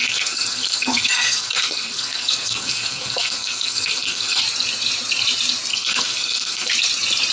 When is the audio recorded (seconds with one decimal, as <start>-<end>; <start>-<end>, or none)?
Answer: 4.4-5.7; 6.7-7.3